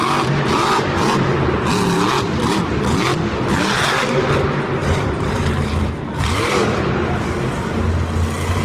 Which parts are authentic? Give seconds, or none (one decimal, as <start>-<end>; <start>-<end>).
0.0-4.8; 6.8-8.6